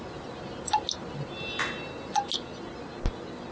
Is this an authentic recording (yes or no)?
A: yes